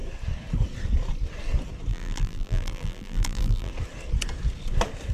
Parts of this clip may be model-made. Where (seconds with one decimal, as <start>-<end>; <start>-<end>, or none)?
1.9-3.7